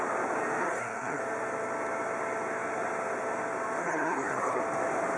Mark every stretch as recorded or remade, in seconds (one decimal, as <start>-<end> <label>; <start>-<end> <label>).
0.0-0.6 recorded; 0.6-1.2 remade; 1.2-3.8 recorded; 3.8-4.6 remade; 4.6-5.2 recorded